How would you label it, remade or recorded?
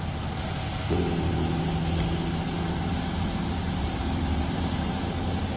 recorded